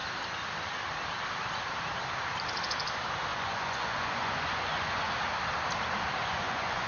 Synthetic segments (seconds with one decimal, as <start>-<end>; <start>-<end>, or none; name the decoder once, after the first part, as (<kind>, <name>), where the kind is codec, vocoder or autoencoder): 3.3-5.1 (vocoder, Vocos); 6.2-6.9